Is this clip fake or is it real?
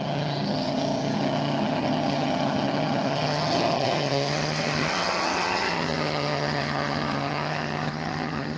fake